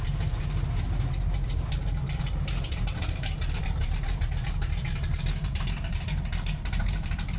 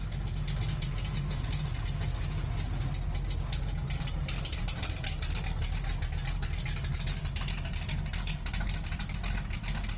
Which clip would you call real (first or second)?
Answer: second